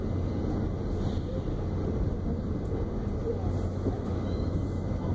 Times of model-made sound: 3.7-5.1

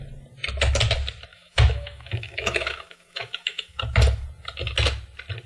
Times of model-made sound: 1.3-3.8

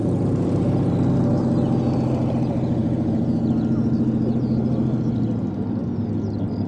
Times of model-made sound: none

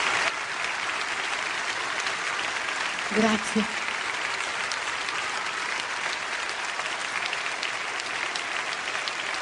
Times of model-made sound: none

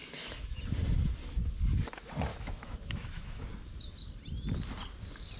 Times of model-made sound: 0.0-0.6; 2.3-3.5

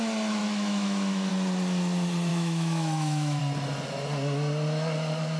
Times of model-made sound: 0.4-1.3; 2.3-3.4

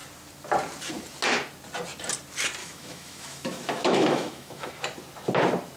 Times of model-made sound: 2.6-4.7

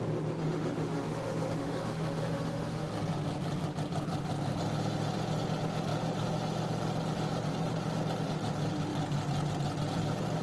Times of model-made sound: 0.4-2.9